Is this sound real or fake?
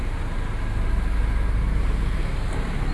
real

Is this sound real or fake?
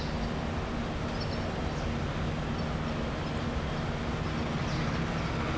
real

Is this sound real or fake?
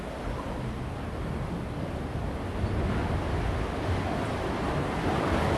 real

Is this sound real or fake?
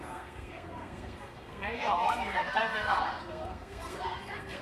fake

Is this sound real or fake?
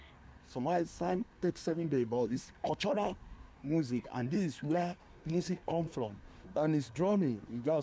fake